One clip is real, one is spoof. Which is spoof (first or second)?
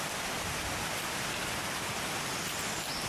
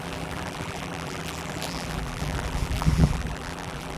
second